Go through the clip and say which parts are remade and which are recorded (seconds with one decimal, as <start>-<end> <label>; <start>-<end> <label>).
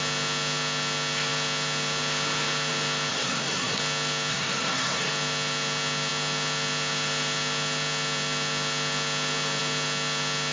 0.0-3.1 recorded; 3.1-3.8 remade; 3.8-4.3 recorded; 4.3-5.1 remade; 5.1-10.5 recorded